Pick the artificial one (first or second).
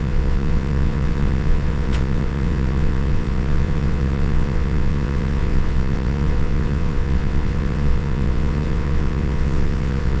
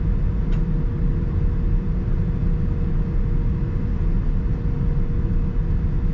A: first